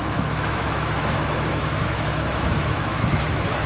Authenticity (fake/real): fake